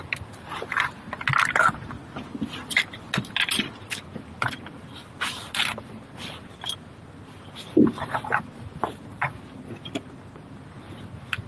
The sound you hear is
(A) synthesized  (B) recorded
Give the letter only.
B